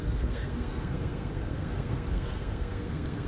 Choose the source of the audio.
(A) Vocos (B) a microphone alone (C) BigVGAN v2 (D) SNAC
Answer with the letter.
D